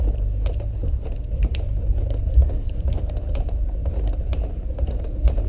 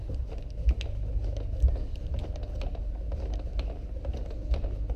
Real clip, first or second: second